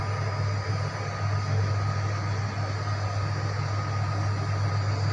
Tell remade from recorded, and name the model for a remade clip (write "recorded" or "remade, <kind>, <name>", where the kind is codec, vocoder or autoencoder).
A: recorded